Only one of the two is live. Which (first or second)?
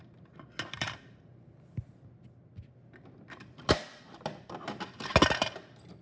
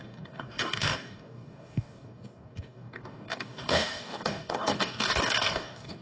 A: first